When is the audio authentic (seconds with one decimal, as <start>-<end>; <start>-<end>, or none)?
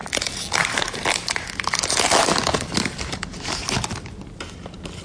0.0-5.0